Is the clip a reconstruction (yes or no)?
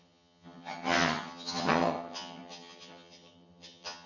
yes